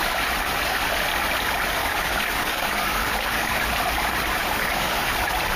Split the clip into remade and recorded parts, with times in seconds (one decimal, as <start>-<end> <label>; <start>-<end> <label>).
0.0-1.8 recorded; 1.8-3.5 remade; 3.5-4.4 recorded; 4.4-5.1 remade; 5.1-5.6 recorded